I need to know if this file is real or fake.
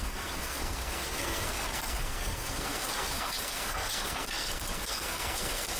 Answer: fake